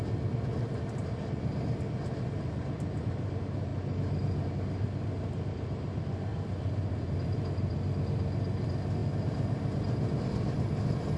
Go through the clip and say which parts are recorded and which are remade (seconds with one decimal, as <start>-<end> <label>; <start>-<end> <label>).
0.0-6.3 recorded; 6.3-7.9 remade; 7.9-9.0 recorded; 9.0-10.3 remade; 10.3-11.2 recorded